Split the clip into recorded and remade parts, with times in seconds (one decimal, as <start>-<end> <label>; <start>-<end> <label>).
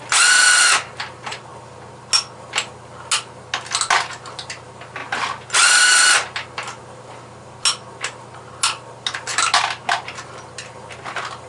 0.0-11.5 recorded